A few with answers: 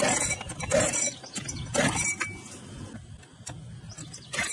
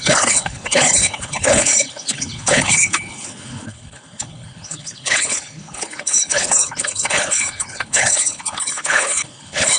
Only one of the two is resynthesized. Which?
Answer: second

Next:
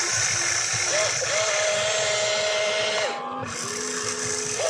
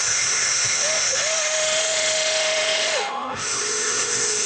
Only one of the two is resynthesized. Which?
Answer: second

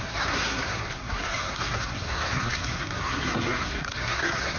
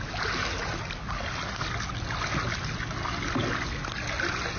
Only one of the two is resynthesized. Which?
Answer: first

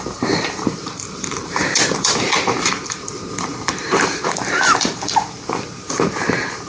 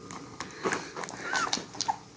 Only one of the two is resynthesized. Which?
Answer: first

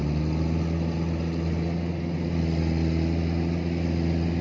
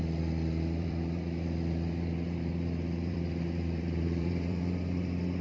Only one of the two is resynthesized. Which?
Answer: second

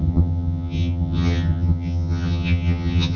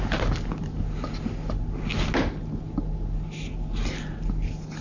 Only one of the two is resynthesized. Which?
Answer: first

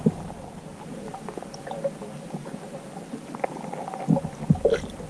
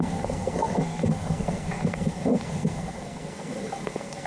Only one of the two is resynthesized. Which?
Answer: second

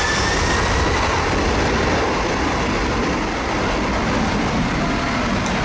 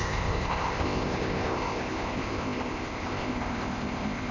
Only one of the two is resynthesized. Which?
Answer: second